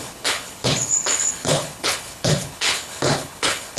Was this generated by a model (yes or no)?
yes